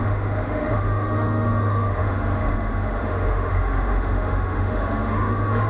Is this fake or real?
fake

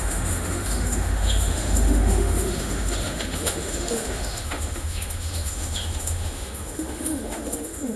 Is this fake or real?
fake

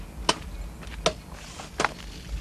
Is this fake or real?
real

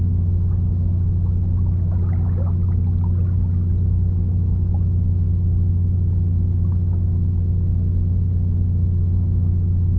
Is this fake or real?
real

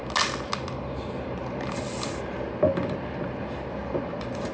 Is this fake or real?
real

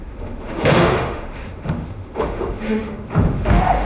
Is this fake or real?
fake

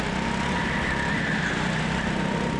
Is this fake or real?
real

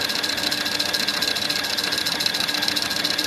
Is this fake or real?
real